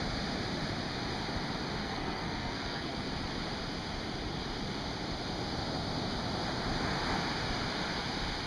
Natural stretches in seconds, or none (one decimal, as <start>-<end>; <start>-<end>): 0.0-1.8; 3.1-8.5